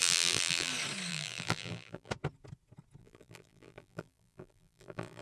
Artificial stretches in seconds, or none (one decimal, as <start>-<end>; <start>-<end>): 0.0-0.7; 1.1-2.1; 3.0-5.2